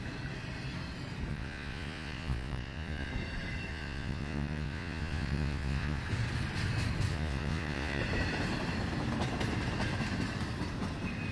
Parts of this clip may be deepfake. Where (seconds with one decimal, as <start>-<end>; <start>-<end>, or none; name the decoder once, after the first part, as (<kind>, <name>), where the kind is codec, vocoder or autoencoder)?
1.3-3.1 (vocoder, Vocos); 3.7-6.0; 7.1-8.0